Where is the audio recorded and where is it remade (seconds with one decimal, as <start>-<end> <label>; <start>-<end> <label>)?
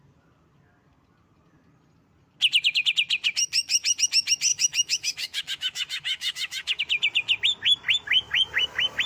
0.0-4.5 recorded; 4.5-6.8 remade; 6.8-9.1 recorded